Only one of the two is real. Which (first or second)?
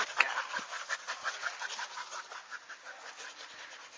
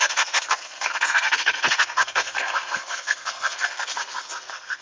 first